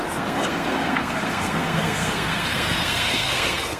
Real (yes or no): no